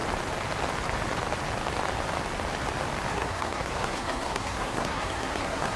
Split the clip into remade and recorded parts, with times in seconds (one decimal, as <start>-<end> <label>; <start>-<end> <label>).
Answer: 0.0-3.1 recorded; 3.1-5.8 remade